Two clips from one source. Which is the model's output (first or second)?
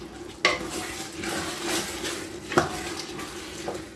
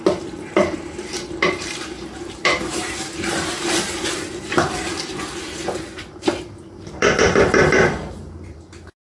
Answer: second